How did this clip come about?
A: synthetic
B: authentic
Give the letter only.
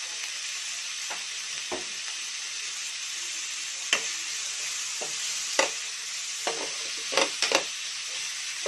B